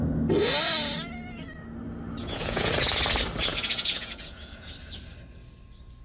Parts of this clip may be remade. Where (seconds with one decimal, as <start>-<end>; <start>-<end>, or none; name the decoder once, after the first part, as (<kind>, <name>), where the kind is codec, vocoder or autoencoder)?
2.2-2.7 (vocoder, Vocos); 3.5-4.7